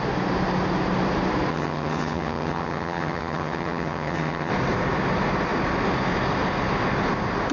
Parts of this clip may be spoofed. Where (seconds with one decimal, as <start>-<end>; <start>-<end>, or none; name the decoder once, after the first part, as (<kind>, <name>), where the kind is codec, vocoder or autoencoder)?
1.5-4.5 (vocoder, HiFi-GAN)